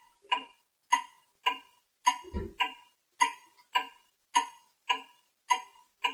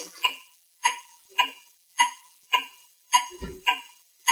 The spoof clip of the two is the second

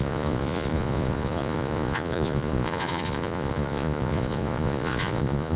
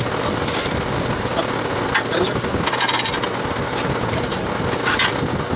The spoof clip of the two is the first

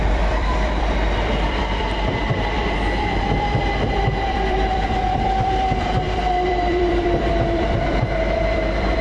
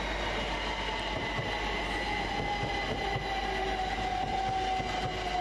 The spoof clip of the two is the first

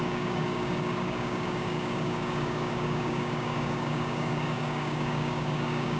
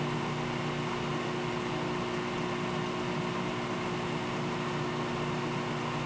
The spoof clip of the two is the first